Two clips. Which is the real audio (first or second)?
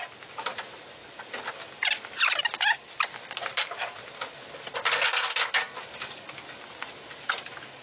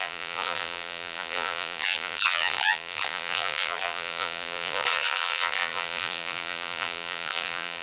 first